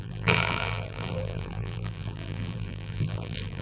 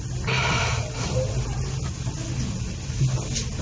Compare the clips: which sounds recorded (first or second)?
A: second